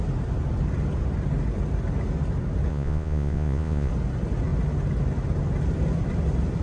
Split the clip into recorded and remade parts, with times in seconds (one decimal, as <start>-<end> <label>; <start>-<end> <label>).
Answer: 0.0-2.7 recorded; 2.7-3.9 remade; 3.9-6.6 recorded